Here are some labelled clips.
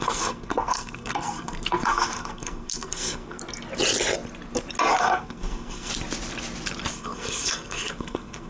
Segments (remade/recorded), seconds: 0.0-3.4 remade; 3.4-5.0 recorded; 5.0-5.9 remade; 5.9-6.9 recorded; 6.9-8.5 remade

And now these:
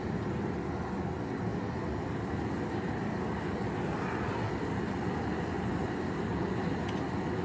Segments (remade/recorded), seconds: 0.0-7.4 recorded

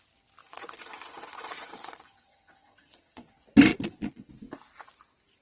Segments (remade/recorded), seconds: 0.0-0.4 recorded; 0.4-3.3 remade; 3.3-3.7 recorded; 3.7-4.3 remade; 4.3-5.4 recorded

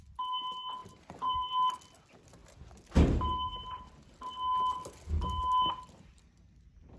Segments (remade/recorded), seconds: 0.0-0.8 recorded; 0.8-1.5 remade; 1.5-7.0 recorded

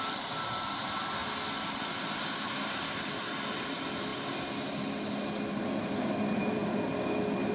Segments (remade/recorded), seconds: 0.0-1.2 remade; 1.2-2.8 recorded; 2.8-4.1 remade; 4.1-5.8 recorded; 5.8-6.6 remade; 6.6-7.5 recorded